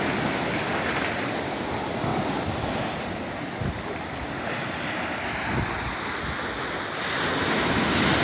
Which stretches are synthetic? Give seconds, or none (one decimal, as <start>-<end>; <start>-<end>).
2.1-4.1